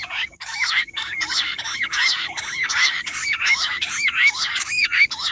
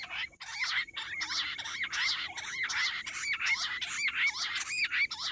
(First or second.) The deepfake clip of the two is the first